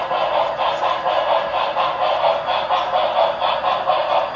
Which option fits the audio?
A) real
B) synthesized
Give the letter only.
A